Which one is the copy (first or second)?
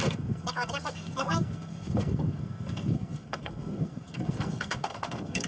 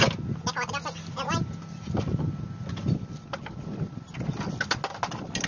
first